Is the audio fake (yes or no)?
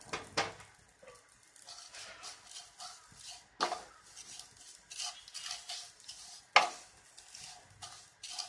no